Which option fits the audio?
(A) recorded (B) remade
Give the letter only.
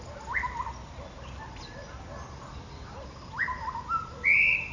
A